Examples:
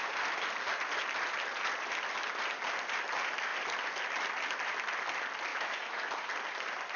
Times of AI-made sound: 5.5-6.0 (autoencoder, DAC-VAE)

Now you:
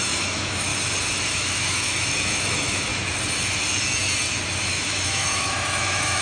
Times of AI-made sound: 0.0-0.7 (autoencoder, DAC-VAE); 1.2-2.9; 4.7-6.2

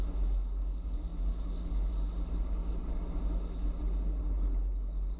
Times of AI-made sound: none

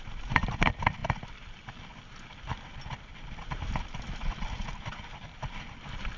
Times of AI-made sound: none

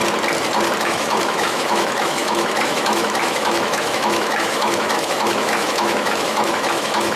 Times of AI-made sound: 0.8-7.2 (autoencoder, DAC-VAE)

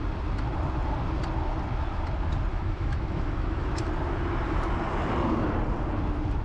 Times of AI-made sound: 2.5-3.7 (autoencoder, DAC-VAE)

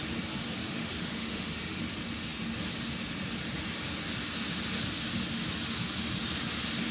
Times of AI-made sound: 0.6-1.8 (autoencoder, DAC-VAE)